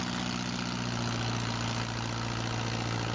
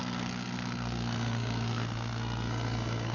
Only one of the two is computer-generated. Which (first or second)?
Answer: second